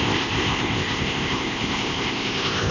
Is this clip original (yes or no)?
no